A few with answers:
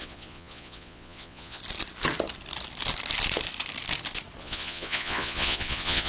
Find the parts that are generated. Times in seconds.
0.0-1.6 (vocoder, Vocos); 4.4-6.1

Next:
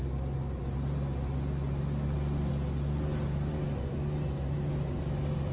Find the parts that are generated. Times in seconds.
none

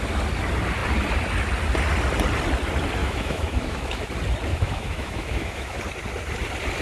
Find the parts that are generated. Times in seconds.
3.0-4.1 (autoencoder, DAC-VAE); 4.5-5.8

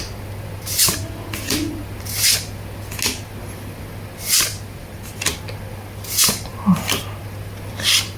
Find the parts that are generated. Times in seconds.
none

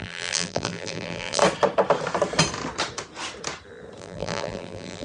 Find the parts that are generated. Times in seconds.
0.0-1.4 (vocoder, BigVGAN v2); 4.0-5.0

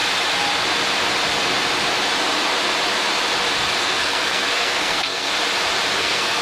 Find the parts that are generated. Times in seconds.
3.8-5.3 (codec, SNAC); 6.0-6.4